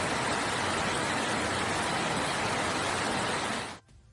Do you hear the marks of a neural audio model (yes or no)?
no